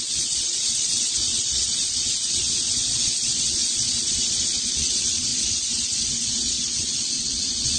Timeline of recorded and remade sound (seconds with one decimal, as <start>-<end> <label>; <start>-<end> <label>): 0.0-7.8 remade